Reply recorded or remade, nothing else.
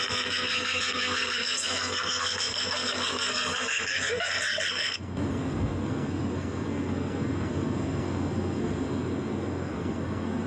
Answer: remade